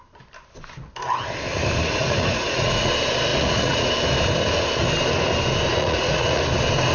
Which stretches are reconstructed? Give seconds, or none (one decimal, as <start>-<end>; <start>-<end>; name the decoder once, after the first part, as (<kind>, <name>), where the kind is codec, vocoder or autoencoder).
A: 1.8-2.9 (vocoder, Vocos); 3.3-3.9; 5.7-6.4